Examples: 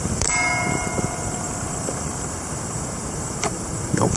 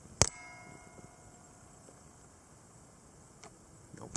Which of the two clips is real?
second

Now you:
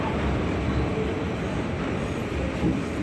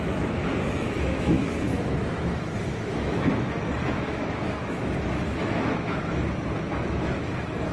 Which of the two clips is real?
first